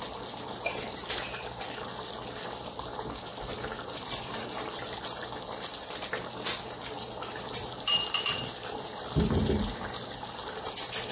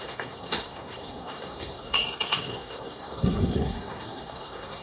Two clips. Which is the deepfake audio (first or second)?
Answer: second